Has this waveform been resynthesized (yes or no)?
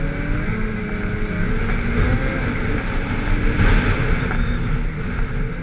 no